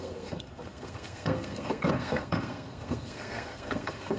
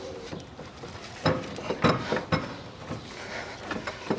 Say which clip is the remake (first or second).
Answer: first